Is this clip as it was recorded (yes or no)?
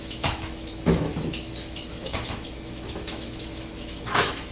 no